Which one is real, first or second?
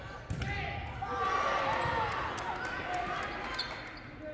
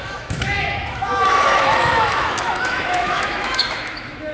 first